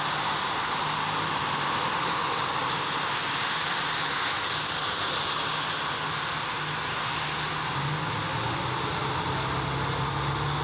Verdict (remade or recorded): recorded